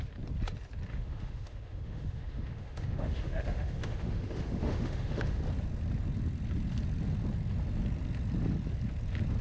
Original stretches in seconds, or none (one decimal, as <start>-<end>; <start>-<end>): 0.0-0.9; 5.4-9.4